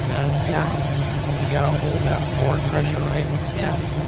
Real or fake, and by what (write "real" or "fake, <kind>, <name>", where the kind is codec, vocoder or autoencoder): fake, vocoder, HiFi-GAN